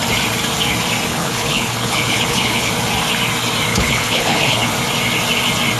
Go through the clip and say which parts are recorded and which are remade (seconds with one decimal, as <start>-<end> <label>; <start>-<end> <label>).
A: 0.0-1.1 recorded; 1.1-2.7 remade; 2.7-3.7 recorded; 3.7-4.7 remade; 4.7-5.8 recorded